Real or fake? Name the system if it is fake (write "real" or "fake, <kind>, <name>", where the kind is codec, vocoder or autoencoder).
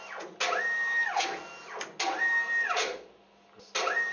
real